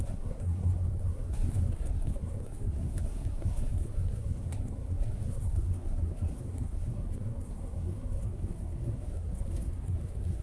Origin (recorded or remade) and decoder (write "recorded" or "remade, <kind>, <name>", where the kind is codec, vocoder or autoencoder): remade, codec, SNAC